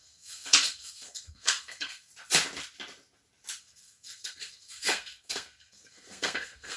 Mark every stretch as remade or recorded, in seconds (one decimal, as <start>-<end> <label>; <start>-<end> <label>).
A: 0.0-2.1 remade; 2.1-3.6 recorded; 3.6-6.8 remade